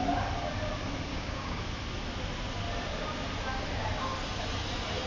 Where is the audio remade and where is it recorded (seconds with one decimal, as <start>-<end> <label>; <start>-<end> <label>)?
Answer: 0.0-1.1 recorded; 1.1-1.6 remade; 1.6-5.1 recorded